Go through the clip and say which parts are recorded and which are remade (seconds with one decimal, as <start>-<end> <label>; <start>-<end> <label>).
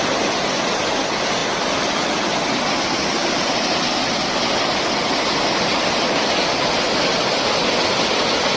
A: 0.0-8.6 recorded